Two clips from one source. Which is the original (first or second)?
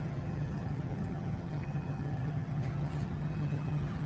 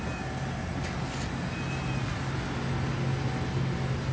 second